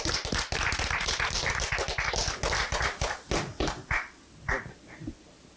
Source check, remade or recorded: recorded